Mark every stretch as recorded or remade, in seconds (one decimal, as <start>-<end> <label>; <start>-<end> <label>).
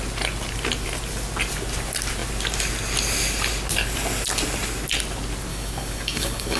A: 0.0-5.5 recorded; 5.5-6.6 remade